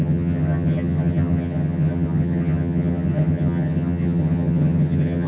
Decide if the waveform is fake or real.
fake